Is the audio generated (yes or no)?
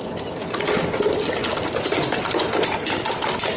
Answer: no